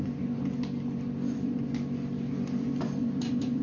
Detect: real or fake real